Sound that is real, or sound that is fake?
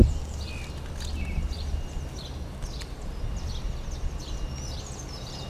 real